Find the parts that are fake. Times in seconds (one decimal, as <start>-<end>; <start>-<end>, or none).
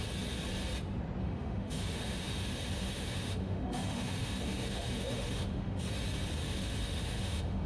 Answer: 1.2-5.8; 6.4-7.7